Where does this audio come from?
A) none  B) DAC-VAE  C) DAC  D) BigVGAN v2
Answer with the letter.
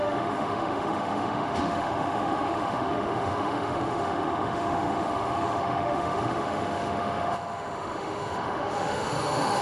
B